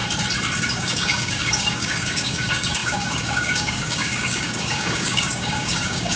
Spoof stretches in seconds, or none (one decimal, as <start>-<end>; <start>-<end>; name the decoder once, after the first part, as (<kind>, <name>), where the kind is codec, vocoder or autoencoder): 0.7-6.2 (codec, DAC)